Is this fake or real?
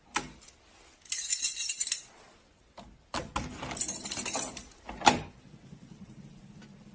real